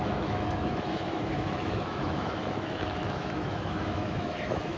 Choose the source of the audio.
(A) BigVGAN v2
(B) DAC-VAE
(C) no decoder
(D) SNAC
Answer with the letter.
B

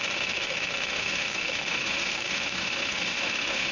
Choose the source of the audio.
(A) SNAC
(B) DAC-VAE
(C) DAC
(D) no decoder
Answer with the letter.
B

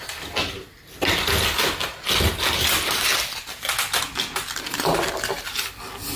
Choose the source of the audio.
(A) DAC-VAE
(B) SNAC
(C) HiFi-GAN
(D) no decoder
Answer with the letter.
D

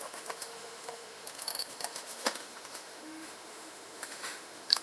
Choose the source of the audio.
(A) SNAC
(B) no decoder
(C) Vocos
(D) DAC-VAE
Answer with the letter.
D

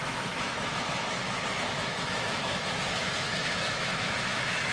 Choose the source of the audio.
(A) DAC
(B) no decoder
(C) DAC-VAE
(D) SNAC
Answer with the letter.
C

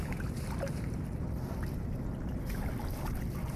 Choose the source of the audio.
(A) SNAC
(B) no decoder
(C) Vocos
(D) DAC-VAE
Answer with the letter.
B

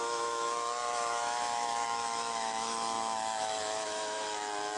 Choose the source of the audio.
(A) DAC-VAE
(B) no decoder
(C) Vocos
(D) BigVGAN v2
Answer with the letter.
A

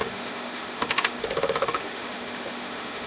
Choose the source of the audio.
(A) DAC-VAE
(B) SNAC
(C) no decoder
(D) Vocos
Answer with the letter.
A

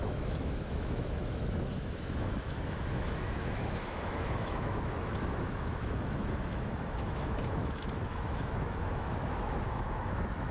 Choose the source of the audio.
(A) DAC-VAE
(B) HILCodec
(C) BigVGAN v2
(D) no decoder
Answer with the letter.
A